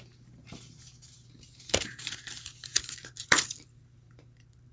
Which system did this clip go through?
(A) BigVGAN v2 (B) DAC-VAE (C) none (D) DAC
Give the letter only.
A